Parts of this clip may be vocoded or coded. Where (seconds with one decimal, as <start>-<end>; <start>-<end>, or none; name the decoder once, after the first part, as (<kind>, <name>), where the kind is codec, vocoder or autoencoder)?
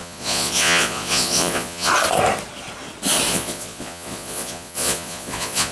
0.0-1.9 (vocoder, Vocos); 3.3-5.7